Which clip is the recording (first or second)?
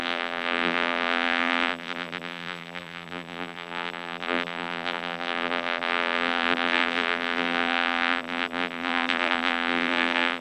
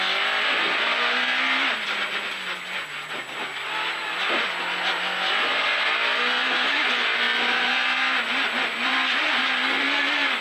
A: second